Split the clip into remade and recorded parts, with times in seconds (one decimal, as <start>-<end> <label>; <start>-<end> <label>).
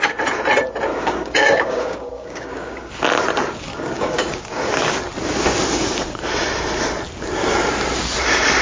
0.0-0.9 recorded; 0.9-2.9 remade; 2.9-3.7 recorded; 3.7-4.7 remade; 4.7-8.6 recorded